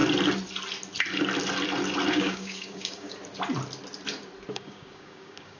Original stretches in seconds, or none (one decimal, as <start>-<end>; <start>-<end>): 0.0-2.1; 3.1-4.5